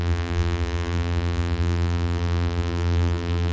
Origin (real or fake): fake